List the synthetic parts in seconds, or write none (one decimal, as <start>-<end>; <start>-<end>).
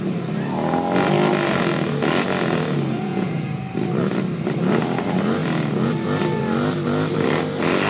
3.1-3.6